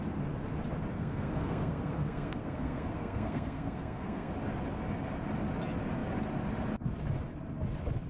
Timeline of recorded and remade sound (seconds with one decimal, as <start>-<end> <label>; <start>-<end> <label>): 0.0-0.9 recorded; 0.9-4.3 remade; 4.3-8.1 recorded